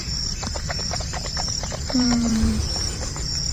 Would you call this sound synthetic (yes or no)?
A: yes